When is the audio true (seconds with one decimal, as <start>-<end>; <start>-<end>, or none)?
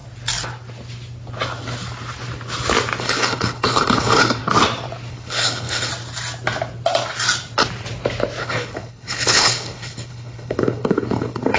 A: 0.0-3.0; 4.4-5.1; 5.9-8.4